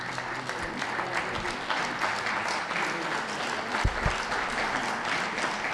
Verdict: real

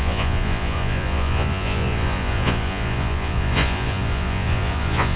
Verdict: fake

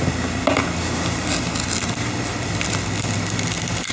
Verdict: real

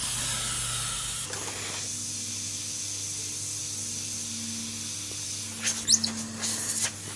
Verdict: real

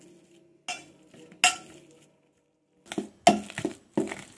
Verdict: real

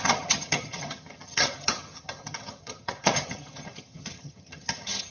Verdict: fake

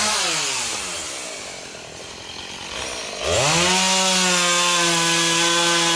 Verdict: real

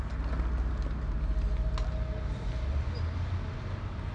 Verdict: real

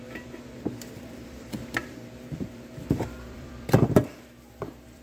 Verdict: fake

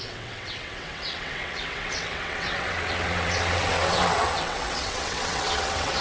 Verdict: fake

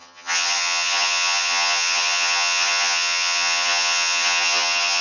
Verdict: fake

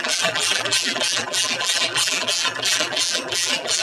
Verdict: fake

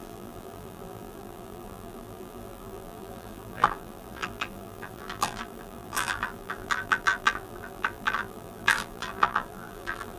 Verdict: fake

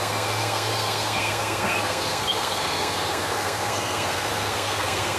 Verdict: fake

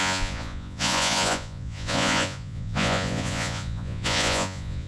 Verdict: fake